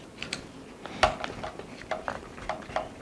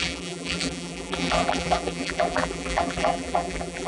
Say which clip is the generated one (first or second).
second